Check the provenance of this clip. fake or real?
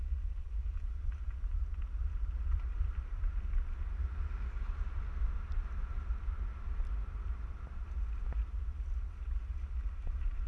real